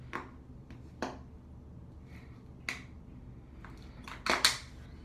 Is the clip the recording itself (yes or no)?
yes